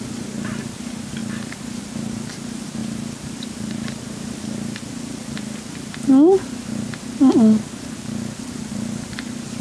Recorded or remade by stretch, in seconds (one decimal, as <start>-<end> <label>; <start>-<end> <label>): 0.0-9.6 recorded